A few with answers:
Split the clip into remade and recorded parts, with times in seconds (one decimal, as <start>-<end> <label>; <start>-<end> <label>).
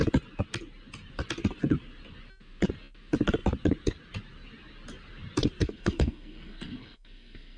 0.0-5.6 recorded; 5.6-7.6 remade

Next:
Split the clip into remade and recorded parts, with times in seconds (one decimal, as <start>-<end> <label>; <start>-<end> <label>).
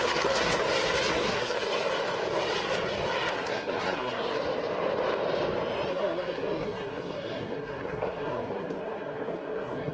0.0-0.6 remade; 0.6-1.1 recorded; 1.1-1.7 remade; 1.7-3.3 recorded; 3.3-4.3 remade; 4.3-5.9 recorded; 5.9-9.9 remade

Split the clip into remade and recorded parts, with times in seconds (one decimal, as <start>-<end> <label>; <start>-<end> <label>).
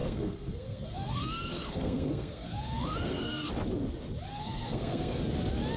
0.0-3.5 remade; 3.5-4.3 recorded; 4.3-5.2 remade; 5.2-5.8 recorded